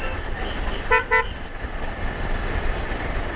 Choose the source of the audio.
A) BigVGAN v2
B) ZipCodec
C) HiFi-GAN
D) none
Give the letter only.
D